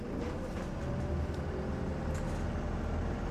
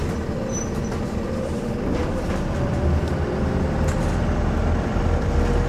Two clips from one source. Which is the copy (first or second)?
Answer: second